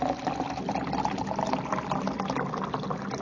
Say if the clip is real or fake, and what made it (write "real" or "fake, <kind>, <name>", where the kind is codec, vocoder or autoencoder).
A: real